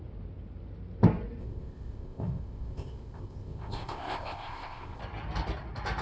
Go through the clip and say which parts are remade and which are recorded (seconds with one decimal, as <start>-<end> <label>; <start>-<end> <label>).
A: 0.0-1.4 recorded; 1.4-5.0 remade; 5.0-6.0 recorded